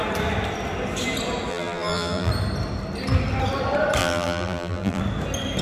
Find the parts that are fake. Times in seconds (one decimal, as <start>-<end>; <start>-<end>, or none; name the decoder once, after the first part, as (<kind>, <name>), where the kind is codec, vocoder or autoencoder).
1.5-2.3 (vocoder, BigVGAN v2); 4.0-5.0